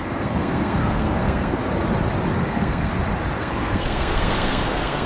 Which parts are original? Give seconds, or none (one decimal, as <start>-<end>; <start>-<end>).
1.6-2.4; 2.9-3.4